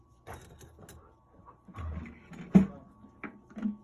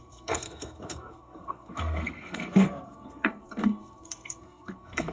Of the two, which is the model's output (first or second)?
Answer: second